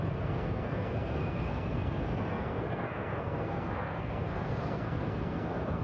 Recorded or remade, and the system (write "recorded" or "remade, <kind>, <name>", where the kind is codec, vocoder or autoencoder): remade, codec, SNAC